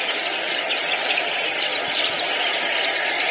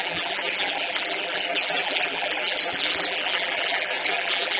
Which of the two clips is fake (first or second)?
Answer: second